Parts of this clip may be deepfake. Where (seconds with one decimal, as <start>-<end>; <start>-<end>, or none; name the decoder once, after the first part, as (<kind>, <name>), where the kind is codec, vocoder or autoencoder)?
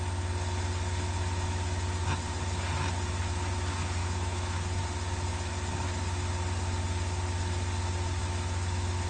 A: 4.0-4.8 (autoencoder, DAC-VAE); 8.2-9.1